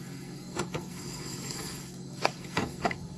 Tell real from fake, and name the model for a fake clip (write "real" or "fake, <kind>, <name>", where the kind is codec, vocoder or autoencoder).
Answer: fake, codec, SNAC